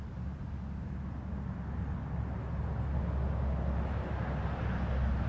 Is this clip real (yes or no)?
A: yes